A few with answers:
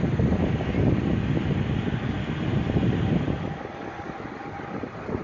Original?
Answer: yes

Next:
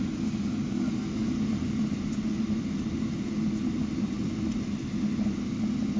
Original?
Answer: yes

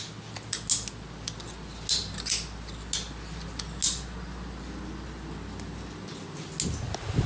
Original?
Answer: yes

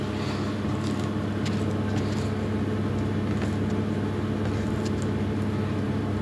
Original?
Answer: no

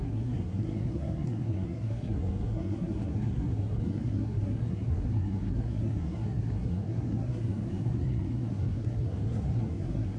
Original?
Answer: no